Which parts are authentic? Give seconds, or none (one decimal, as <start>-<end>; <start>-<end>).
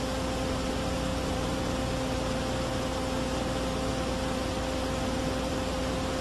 0.0-1.1; 1.6-6.2